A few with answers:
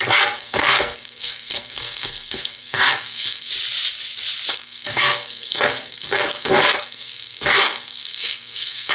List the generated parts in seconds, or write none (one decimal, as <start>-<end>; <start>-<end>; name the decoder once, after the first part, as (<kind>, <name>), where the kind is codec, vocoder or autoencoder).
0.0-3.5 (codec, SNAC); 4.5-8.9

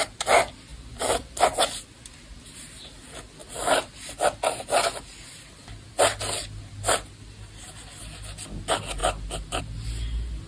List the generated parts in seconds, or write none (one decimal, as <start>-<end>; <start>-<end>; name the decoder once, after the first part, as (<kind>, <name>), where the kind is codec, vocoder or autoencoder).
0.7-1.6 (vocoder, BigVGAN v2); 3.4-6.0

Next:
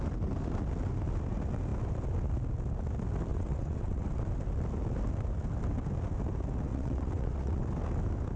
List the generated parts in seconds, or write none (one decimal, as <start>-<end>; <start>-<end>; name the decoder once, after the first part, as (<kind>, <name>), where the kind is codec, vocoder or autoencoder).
3.3-4.2 (vocoder, WaveNeXt); 6.7-7.7

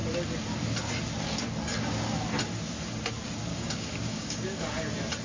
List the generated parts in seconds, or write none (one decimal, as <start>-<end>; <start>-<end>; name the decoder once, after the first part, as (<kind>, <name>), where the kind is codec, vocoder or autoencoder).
3.5-4.6 (codec, DAC)